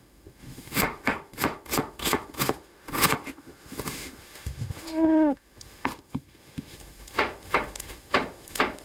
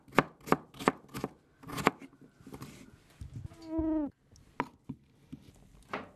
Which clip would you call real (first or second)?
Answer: second